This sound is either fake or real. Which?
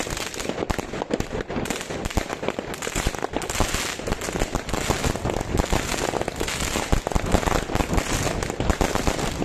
fake